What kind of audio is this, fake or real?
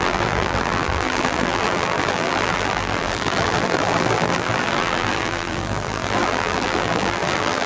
fake